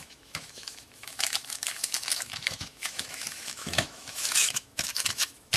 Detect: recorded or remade remade